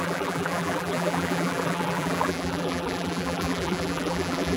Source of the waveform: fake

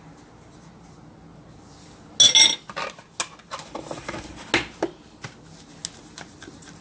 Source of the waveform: real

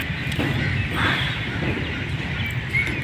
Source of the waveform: real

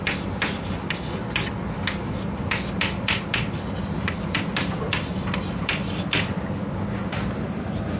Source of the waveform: real